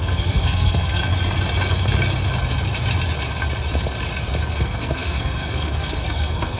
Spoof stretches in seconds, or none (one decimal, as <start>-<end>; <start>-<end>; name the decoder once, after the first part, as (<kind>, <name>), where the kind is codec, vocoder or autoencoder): 0.0-1.0 (codec, SNAC); 4.5-6.6